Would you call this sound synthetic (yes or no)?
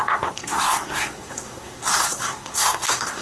yes